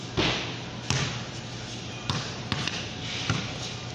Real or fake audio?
real